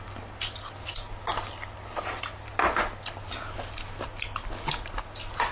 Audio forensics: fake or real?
real